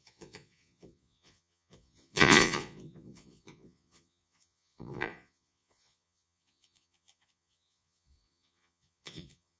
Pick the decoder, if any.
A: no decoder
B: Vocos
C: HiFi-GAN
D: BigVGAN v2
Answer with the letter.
B